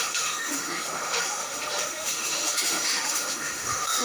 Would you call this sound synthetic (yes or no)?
yes